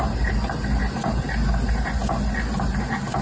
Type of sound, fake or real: real